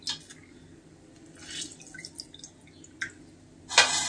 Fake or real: real